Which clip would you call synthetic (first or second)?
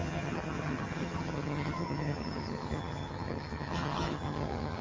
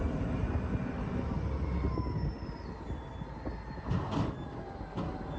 first